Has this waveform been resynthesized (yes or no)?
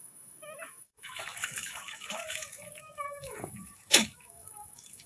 yes